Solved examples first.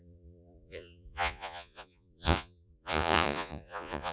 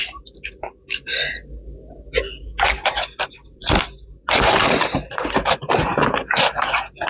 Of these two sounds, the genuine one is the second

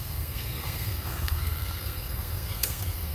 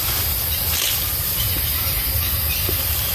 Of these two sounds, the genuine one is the second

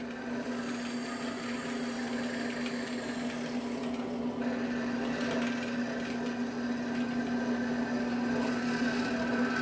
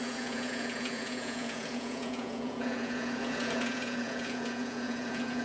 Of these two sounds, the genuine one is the first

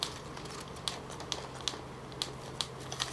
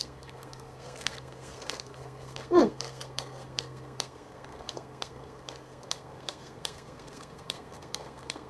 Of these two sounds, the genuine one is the first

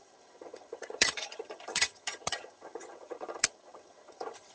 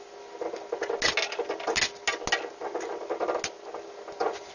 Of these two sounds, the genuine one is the second